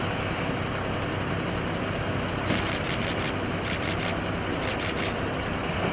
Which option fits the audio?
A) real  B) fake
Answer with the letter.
A